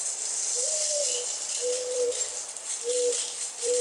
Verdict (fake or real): fake